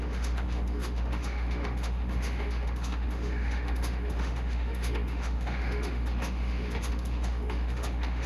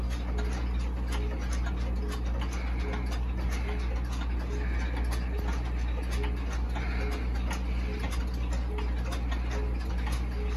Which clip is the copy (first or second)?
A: first